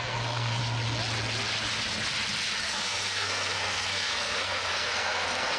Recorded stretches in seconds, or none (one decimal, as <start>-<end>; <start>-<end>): 0.6-2.6